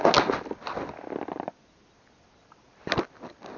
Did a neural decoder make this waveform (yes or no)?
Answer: no